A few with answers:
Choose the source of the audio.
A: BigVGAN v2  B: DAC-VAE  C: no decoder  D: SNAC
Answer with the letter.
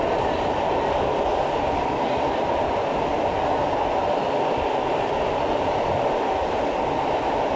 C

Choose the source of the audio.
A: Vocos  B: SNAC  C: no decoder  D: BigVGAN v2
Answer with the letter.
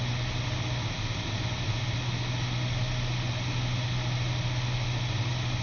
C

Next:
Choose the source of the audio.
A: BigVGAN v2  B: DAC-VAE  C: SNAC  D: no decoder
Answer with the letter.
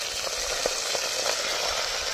D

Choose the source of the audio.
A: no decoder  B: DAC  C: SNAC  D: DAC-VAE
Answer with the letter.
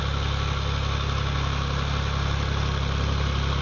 A